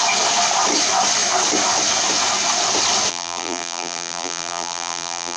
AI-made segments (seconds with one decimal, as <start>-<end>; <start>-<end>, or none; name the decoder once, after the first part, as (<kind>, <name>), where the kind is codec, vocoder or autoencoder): 3.1-5.4 (vocoder, BigVGAN v2)